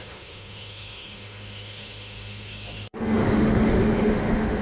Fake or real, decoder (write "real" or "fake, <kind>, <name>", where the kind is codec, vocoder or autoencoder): fake, autoencoder, DAC-VAE